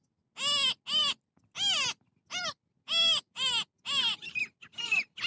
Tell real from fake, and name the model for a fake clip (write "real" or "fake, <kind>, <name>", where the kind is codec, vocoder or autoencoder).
real